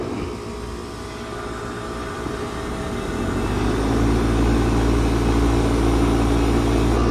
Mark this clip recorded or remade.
recorded